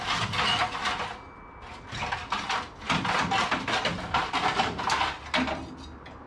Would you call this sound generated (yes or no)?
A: no